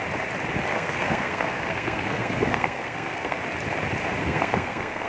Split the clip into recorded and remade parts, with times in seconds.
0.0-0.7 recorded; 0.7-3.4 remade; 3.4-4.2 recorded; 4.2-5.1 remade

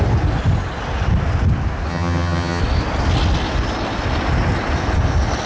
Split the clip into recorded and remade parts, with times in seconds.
0.0-1.9 recorded; 1.9-2.6 remade; 2.6-5.5 recorded

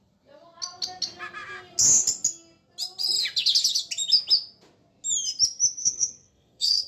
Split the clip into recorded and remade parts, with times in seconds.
0.0-5.8 recorded; 5.8-6.9 remade

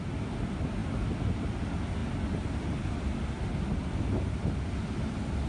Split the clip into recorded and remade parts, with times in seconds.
0.0-5.5 recorded

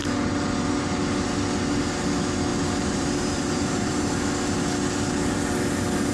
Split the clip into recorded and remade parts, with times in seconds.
0.0-2.5 recorded; 2.5-4.1 remade; 4.1-6.1 recorded

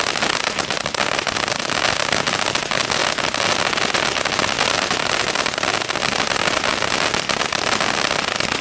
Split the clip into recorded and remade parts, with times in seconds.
0.0-8.6 recorded